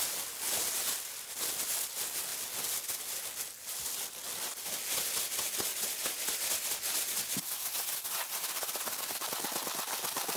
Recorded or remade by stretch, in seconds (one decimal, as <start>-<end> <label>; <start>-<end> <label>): 0.0-10.4 recorded